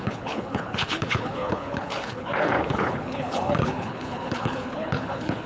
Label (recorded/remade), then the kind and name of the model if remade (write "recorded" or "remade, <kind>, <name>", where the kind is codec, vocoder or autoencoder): remade, codec, HILCodec